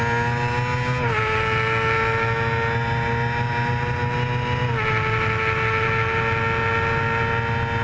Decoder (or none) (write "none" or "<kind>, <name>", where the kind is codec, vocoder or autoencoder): none